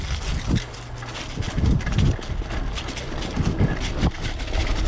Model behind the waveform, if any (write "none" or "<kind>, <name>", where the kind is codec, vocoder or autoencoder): none